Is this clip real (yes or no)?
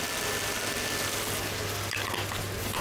yes